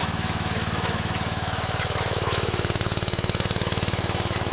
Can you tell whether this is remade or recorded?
remade